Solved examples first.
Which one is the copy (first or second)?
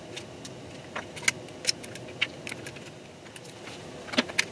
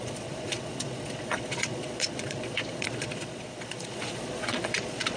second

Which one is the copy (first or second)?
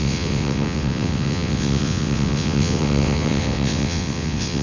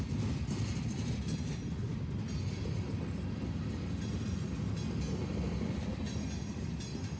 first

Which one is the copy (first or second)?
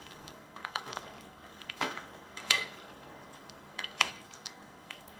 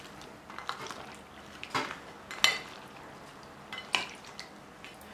first